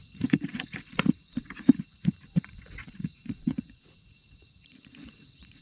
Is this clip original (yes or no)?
no